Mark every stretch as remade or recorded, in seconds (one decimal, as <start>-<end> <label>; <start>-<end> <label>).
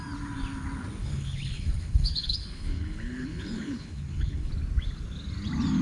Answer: 0.0-1.0 recorded; 1.0-4.5 remade; 4.5-5.8 recorded